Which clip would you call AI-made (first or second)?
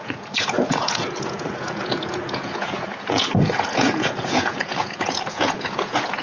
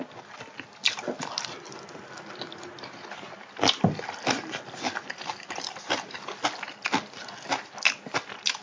first